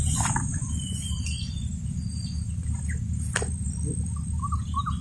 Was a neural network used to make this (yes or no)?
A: no